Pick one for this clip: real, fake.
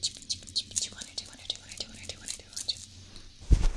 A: real